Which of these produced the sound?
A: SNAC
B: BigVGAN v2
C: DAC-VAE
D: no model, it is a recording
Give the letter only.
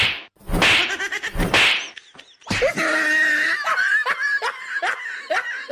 D